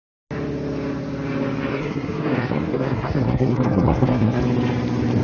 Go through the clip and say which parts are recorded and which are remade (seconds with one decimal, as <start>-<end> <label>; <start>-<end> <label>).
0.0-1.7 recorded; 1.7-4.4 remade; 4.4-5.2 recorded